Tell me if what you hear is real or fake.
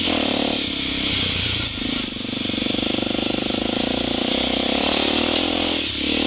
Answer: real